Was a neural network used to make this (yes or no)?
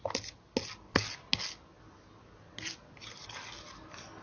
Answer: no